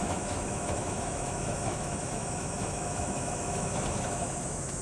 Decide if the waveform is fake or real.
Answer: fake